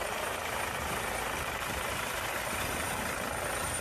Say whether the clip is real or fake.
real